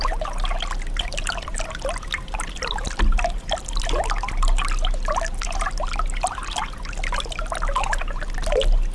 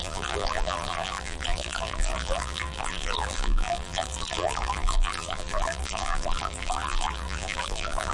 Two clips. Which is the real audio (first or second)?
first